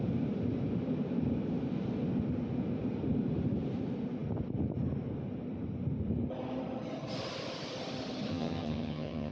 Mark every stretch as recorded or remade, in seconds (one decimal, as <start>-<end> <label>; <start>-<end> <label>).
0.0-8.3 recorded; 8.3-9.3 remade